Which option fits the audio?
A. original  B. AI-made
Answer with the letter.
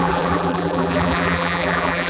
B